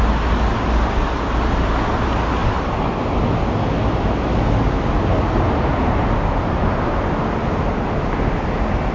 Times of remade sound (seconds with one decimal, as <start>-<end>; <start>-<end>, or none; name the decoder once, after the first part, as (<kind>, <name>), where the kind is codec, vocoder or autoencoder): none